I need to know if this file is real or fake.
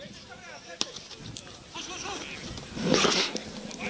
real